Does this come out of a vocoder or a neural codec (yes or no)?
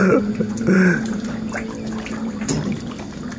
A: no